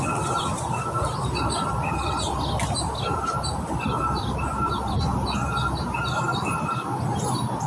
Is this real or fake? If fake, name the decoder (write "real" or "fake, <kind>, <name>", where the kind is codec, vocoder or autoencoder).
real